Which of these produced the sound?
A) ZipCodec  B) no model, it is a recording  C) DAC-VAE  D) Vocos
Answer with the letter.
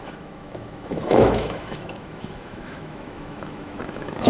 C